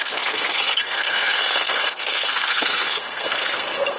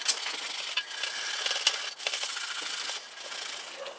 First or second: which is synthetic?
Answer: first